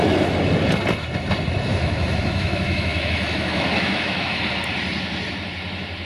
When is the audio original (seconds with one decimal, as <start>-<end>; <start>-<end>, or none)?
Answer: 0.0-1.7; 4.4-6.0